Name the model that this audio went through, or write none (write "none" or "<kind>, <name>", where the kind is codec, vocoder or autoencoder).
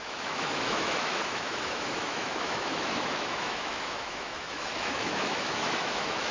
autoencoder, DAC-VAE